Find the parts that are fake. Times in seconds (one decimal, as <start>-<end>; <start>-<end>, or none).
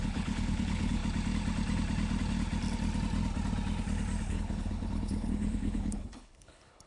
0.0-1.0; 4.3-6.9